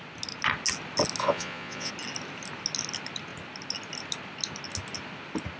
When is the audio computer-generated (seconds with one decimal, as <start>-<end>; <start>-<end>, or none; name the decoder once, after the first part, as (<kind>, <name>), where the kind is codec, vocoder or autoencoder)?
1.2-1.9 (vocoder, Vocos)